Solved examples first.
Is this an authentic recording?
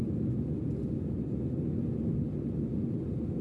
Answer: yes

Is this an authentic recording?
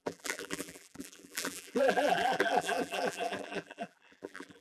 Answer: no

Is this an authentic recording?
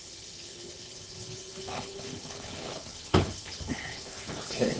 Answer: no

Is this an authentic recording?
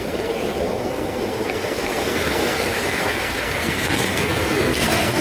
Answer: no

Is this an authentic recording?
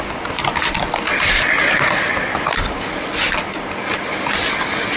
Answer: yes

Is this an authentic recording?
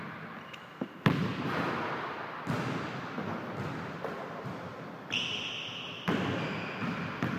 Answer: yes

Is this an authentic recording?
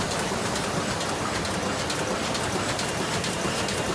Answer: yes